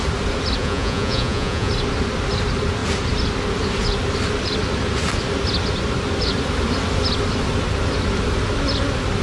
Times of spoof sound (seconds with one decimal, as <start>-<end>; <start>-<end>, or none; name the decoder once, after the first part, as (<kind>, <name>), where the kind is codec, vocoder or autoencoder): 0.6-1.7 (vocoder, Vocos)

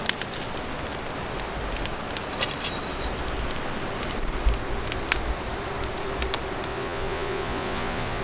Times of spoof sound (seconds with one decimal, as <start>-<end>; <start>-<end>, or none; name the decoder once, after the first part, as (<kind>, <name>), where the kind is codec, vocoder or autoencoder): 6.7-8.2 (vocoder, Vocos)

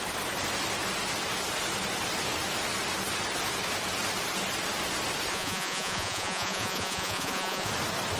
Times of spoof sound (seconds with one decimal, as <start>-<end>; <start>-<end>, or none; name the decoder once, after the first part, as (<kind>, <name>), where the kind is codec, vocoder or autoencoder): 5.3-7.7 (vocoder, Vocos)

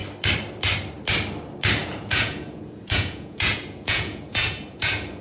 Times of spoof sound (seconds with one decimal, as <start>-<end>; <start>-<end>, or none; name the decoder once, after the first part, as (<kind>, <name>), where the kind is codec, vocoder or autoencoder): 1.8-5.2 (vocoder, Vocos)

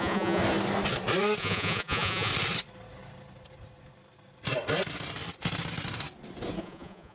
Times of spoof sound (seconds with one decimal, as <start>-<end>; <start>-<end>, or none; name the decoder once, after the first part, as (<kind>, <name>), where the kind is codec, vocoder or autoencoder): 0.0-0.4 (vocoder, Vocos); 1.4-2.3; 6.6-7.1

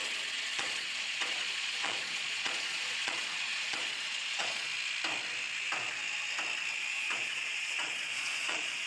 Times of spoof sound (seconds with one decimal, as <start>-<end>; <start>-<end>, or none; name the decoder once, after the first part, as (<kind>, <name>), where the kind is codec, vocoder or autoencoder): 0.0-4.7 (vocoder, Vocos); 6.9-8.9

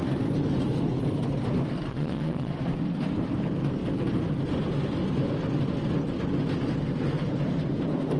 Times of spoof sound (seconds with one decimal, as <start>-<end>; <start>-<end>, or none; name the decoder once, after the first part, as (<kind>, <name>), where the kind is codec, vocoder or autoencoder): 1.9-2.5 (vocoder, Vocos)